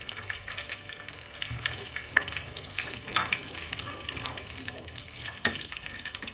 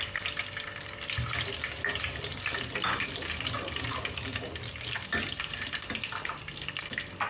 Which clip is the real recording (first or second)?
second